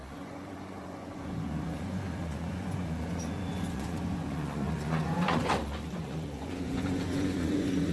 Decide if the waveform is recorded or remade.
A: remade